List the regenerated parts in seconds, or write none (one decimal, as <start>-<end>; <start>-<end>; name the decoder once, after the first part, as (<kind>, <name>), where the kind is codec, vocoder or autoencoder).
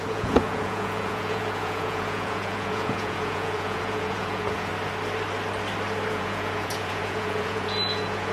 0.0-4.7 (vocoder, Vocos); 6.1-8.3